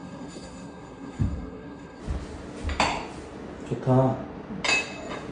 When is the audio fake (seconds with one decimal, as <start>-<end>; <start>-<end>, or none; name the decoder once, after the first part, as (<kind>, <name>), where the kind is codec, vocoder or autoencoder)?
0.0-2.0 (codec, SNAC)